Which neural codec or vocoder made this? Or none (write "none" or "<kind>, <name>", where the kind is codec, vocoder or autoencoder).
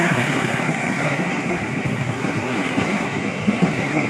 codec, SNAC